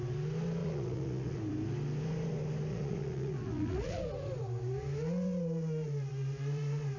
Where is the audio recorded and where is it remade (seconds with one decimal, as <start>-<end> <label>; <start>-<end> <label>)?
0.0-0.6 recorded; 0.6-1.4 remade; 1.4-2.7 recorded; 2.7-4.0 remade; 4.0-7.0 recorded